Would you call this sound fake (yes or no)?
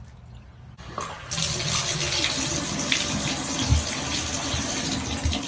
no